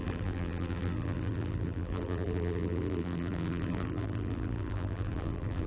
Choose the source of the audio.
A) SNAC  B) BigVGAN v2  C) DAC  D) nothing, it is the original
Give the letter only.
B